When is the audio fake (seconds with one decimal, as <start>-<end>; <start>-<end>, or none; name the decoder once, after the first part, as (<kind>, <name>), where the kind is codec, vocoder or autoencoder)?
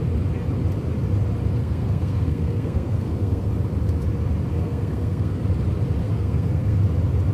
1.6-3.5 (codec, SNAC); 4.5-5.4; 6.0-6.8